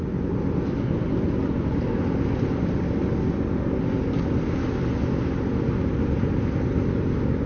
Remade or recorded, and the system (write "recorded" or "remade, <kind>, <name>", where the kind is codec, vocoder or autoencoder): recorded